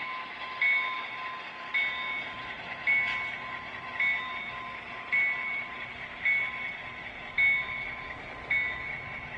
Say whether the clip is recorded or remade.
recorded